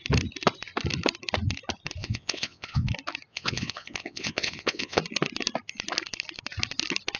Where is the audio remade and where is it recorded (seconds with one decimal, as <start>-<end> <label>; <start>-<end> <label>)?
0.0-2.0 recorded; 2.0-2.9 remade; 2.9-3.3 recorded; 3.3-5.0 remade; 5.0-7.2 recorded